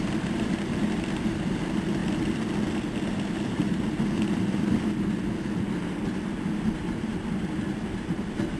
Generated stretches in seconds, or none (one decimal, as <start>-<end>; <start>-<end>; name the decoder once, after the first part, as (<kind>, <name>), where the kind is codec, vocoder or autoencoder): 7.1-8.2 (vocoder, BigVGAN v2)